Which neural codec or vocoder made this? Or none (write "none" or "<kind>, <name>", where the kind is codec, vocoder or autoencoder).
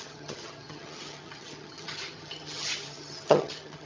vocoder, HiFi-GAN